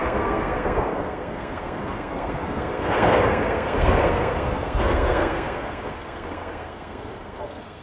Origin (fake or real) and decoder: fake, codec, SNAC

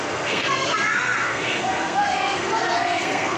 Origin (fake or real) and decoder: fake, codec, SNAC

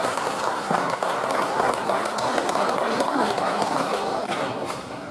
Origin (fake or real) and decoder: fake, codec, SNAC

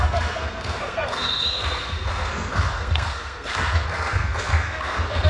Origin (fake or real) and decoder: fake, codec, SNAC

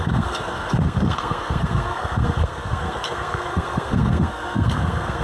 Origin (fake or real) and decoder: fake, codec, SNAC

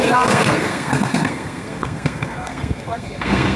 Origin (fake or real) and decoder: fake, codec, SNAC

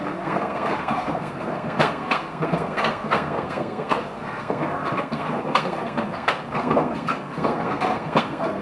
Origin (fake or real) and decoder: fake, codec, SNAC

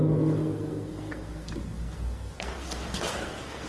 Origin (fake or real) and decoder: fake, codec, SNAC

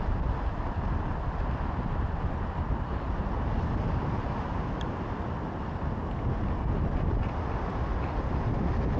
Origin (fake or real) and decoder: real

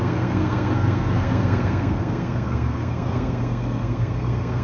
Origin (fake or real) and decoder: fake, codec, SNAC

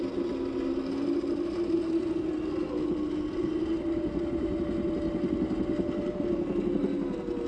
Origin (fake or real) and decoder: real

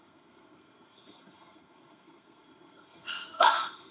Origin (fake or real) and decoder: fake, codec, SNAC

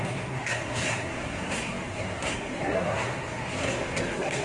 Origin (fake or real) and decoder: fake, codec, SNAC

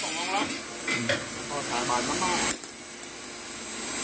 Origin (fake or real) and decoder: real